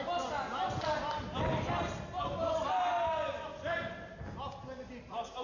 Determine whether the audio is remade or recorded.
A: recorded